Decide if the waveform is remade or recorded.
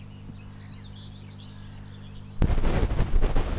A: recorded